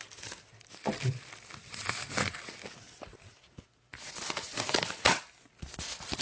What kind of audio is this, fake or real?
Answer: real